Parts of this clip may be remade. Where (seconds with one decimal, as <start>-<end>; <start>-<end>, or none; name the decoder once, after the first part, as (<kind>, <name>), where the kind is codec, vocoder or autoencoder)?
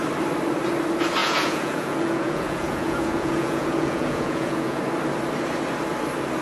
1.2-4.8 (vocoder, Vocos)